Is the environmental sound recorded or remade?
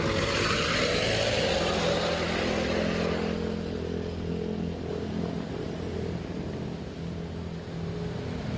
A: recorded